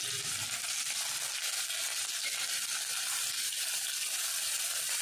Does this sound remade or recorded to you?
recorded